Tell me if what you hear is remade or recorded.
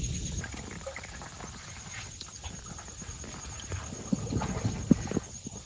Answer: recorded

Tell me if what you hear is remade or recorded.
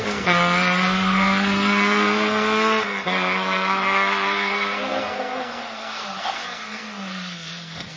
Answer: remade